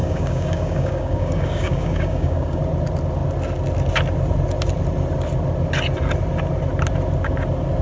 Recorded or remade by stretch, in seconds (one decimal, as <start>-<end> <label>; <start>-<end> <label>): 0.0-2.6 remade; 2.6-7.8 recorded